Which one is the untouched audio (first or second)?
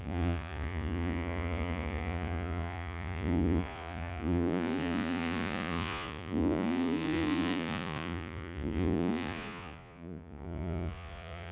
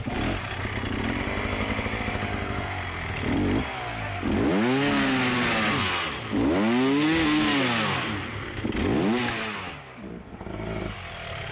second